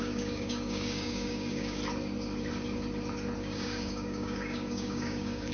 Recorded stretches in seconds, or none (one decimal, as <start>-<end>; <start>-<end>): 1.8-3.4